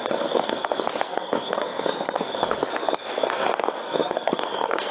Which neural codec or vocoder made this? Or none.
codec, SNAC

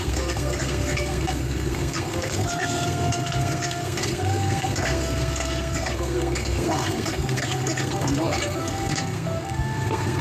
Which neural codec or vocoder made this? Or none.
codec, SNAC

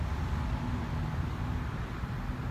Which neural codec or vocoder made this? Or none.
none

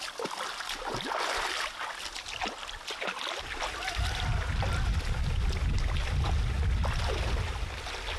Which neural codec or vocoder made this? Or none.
none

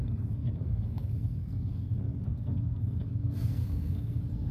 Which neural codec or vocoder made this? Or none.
codec, SNAC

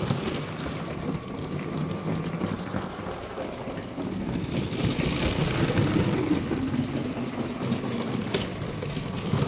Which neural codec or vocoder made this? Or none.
none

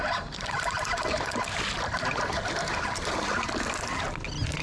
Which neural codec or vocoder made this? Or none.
none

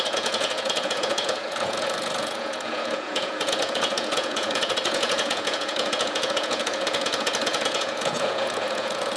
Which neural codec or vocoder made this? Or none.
vocoder, Vocos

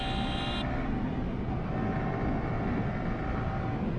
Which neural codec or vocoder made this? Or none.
none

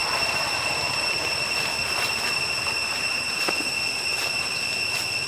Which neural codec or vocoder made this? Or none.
none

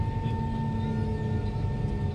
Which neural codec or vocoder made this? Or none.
none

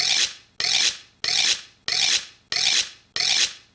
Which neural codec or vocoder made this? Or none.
none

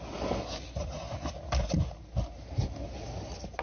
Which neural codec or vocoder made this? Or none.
none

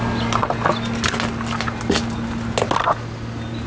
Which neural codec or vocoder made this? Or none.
none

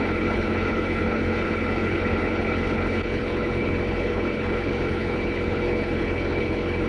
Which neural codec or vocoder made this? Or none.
codec, HILCodec